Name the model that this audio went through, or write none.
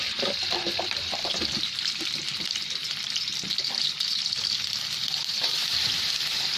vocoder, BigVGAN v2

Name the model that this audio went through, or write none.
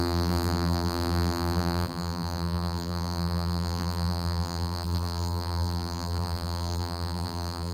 vocoder, BigVGAN v2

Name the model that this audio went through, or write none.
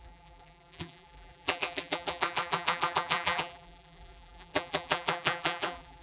vocoder, BigVGAN v2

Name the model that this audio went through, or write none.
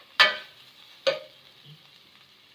none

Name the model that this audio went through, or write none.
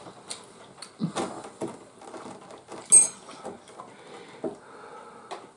none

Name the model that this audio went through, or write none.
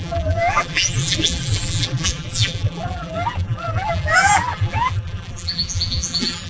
vocoder, BigVGAN v2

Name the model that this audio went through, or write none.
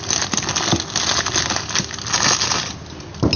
none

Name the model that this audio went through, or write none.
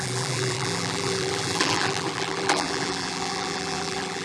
vocoder, BigVGAN v2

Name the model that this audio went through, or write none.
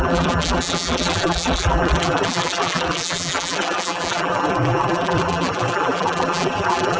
vocoder, BigVGAN v2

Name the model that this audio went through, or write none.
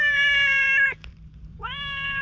vocoder, BigVGAN v2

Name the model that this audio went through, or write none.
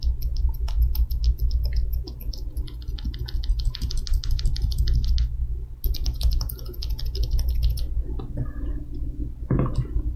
none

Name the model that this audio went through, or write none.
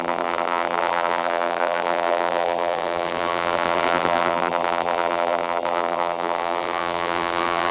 vocoder, BigVGAN v2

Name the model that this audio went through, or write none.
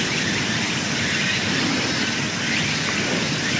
vocoder, BigVGAN v2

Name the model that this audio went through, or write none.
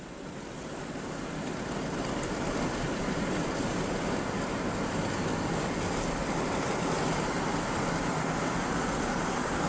none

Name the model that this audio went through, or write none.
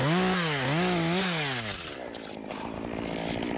none